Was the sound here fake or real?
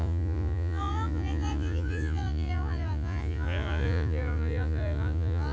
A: fake